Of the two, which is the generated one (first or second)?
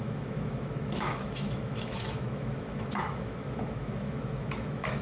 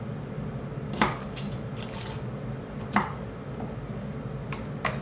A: first